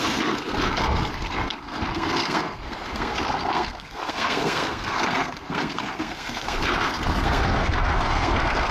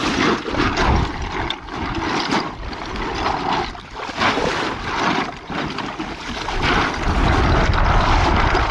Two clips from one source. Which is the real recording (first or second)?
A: second